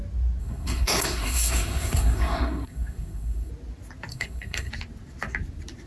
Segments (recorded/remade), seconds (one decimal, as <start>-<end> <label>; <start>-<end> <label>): 0.0-0.4 recorded; 0.4-3.5 remade; 3.5-4.1 recorded; 4.1-4.7 remade; 4.7-5.9 recorded